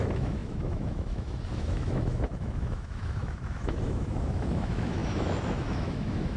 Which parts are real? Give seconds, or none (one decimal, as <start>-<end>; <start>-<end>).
none